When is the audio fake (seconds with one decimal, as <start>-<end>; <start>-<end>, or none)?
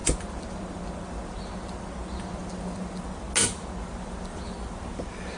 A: none